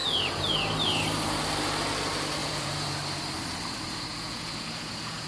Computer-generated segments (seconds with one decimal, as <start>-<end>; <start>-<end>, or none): 0.0-0.5; 2.4-2.9; 4.1-5.3